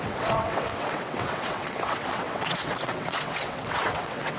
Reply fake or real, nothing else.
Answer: fake